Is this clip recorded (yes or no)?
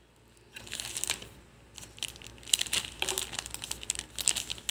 yes